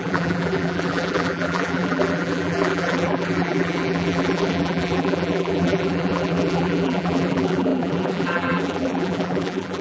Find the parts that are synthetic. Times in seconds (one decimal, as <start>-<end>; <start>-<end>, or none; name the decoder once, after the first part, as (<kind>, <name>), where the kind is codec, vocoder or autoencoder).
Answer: 0.0-9.8 (vocoder, BigVGAN v2)